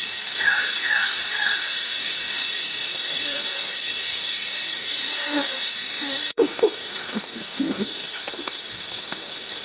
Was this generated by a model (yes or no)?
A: yes